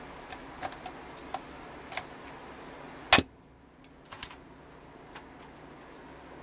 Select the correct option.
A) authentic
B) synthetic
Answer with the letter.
A